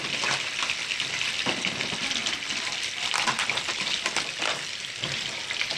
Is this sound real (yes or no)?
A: yes